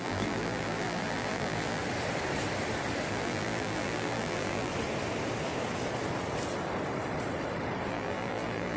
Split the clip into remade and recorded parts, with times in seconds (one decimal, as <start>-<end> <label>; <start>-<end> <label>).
0.0-1.8 remade; 1.8-3.1 recorded; 3.1-4.7 remade; 4.7-7.9 recorded; 7.9-8.8 remade